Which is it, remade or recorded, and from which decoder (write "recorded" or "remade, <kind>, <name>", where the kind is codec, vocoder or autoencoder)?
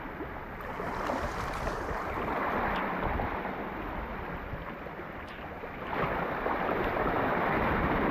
recorded